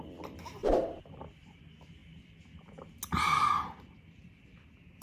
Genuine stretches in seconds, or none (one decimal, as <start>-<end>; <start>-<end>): 0.0-0.6; 1.6-5.0